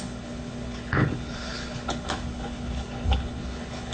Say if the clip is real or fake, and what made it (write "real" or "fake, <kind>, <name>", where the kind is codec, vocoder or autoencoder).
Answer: fake, codec, HILCodec